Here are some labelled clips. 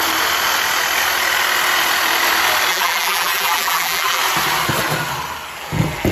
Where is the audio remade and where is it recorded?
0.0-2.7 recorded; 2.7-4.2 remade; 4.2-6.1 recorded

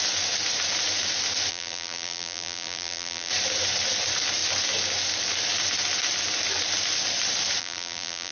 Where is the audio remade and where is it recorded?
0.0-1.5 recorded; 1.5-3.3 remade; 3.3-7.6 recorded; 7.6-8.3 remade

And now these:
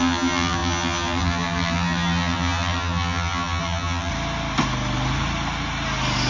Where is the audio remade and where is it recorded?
0.0-4.1 remade; 4.1-6.3 recorded